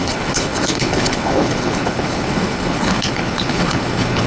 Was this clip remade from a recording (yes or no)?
yes